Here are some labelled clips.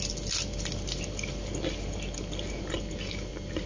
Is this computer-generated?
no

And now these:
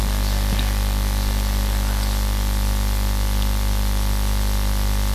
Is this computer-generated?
no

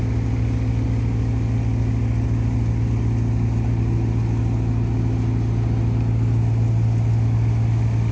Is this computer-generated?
no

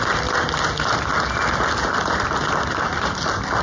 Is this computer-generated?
no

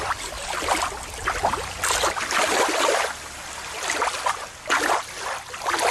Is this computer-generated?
no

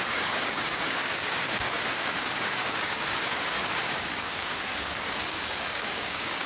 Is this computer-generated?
yes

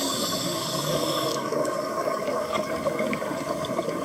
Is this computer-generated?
yes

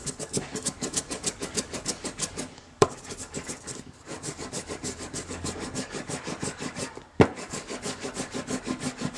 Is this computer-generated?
yes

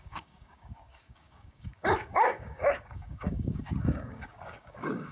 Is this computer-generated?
yes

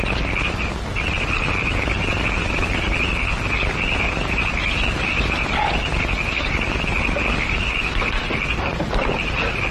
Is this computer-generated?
no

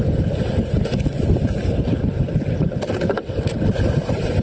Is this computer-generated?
no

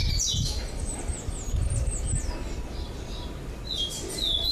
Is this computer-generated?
no